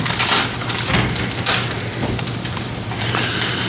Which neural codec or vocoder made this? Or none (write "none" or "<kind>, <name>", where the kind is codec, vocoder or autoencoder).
none